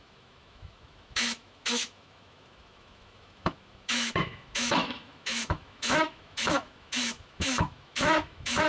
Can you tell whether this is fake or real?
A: fake